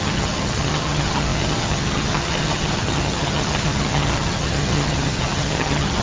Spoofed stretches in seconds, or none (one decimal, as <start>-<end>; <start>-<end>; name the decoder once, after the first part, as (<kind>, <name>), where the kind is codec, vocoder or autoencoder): 0.0-6.0 (vocoder, HiFi-GAN)